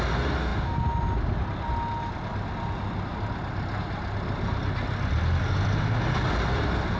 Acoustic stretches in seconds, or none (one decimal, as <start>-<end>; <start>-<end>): 0.0-7.0